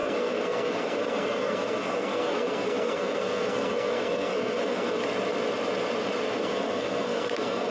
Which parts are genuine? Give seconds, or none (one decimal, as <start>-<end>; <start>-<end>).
5.0-6.3